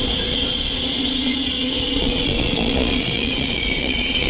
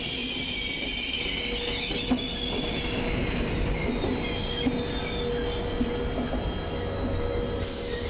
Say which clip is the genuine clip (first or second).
second